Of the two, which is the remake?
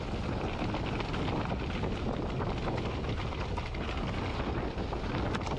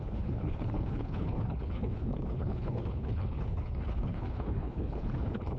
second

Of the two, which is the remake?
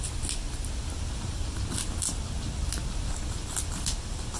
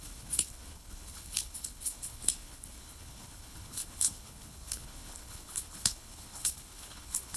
second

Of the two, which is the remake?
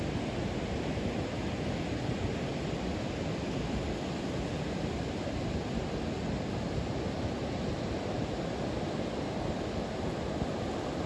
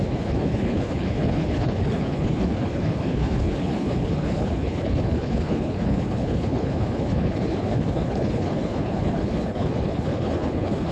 second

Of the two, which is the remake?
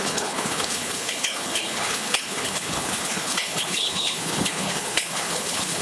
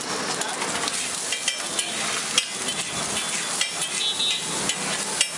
first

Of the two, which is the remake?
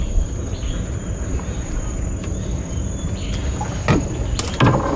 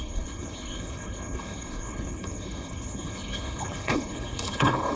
second